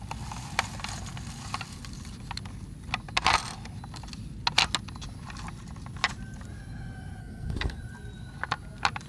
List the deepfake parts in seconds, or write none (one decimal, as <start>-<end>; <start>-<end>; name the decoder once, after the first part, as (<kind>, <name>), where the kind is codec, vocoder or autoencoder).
7.2-7.8 (codec, SNAC)